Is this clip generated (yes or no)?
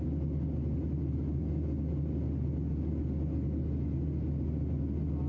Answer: no